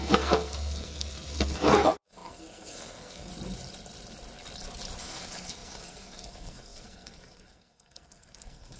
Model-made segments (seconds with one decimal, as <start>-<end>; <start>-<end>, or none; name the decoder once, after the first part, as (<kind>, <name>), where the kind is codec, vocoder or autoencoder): 0.0-3.3 (codec, SNAC); 5.0-8.8